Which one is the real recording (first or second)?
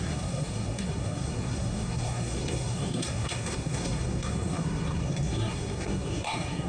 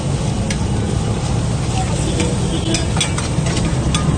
second